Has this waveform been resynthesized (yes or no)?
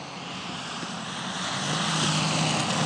no